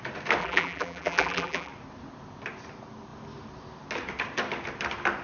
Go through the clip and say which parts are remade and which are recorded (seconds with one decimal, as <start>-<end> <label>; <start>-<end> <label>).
0.0-0.4 recorded; 0.4-1.7 remade; 1.7-5.2 recorded